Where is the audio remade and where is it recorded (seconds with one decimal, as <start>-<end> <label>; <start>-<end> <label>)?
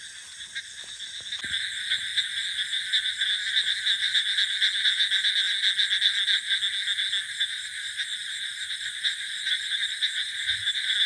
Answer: 0.0-11.1 recorded